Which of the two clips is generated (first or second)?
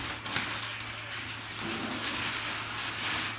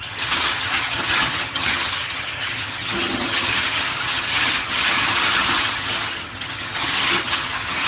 second